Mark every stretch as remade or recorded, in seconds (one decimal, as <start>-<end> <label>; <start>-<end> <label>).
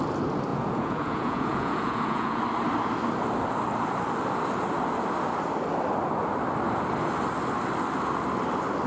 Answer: 0.0-0.5 recorded; 0.5-2.4 remade; 2.4-8.9 recorded